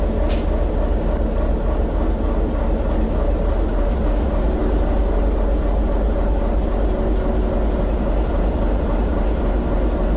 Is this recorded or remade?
recorded